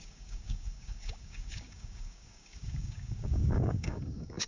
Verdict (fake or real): fake